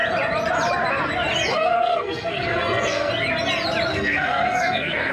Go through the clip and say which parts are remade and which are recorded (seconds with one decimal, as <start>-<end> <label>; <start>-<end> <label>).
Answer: 0.0-1.5 recorded; 1.5-3.1 remade; 3.1-3.9 recorded; 3.9-5.1 remade